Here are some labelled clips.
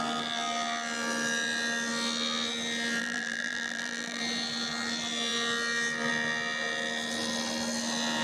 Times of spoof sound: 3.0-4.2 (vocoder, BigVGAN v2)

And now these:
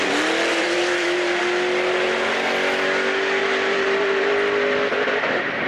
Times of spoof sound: 0.5-1.4 (vocoder, BigVGAN v2); 3.4-4.3

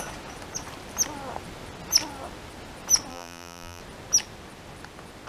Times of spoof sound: 3.1-3.8 (vocoder, BigVGAN v2)

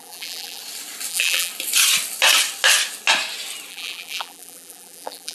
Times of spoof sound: 0.0-0.6 (vocoder, BigVGAN v2); 1.1-1.5; 3.7-5.3

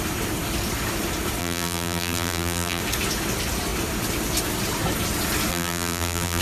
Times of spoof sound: 1.4-2.8 (vocoder, BigVGAN v2); 5.5-6.4

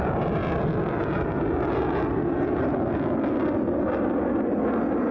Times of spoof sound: none